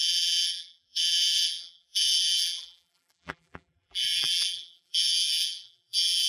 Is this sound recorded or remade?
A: remade